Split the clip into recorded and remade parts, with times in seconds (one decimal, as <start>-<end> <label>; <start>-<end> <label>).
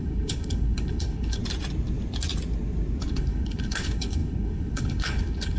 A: 0.0-1.4 remade; 1.4-3.1 recorded; 3.1-5.6 remade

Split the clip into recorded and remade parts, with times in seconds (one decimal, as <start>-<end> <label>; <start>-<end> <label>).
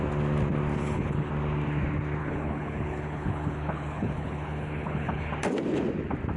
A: 0.0-0.8 recorded; 0.8-1.3 remade; 1.3-2.2 recorded; 2.2-5.3 remade; 5.3-6.4 recorded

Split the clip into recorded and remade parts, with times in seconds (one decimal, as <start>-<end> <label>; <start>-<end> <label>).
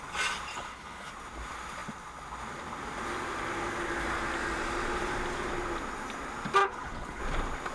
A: 0.0-0.5 recorded; 0.5-1.1 remade; 1.1-6.6 recorded; 6.6-7.2 remade; 7.2-7.7 recorded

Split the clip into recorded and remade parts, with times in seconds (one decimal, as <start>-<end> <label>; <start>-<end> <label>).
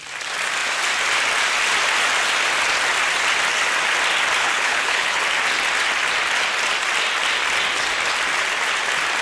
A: 0.0-4.4 recorded; 4.4-5.2 remade; 5.2-9.2 recorded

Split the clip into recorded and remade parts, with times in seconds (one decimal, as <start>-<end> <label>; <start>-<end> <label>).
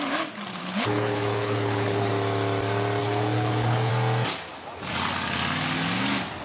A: 0.0-0.6 recorded; 0.6-2.1 remade; 2.1-3.0 recorded; 3.0-3.9 remade; 3.9-6.4 recorded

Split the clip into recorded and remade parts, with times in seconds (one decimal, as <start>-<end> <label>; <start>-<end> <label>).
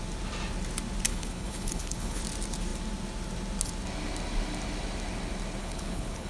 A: 0.0-1.1 recorded; 1.1-2.2 remade; 2.2-5.6 recorded; 5.6-6.3 remade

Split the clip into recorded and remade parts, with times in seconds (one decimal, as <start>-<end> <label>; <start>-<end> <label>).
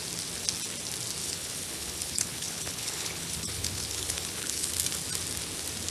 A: 0.0-1.2 recorded; 1.2-4.7 remade; 4.7-5.9 recorded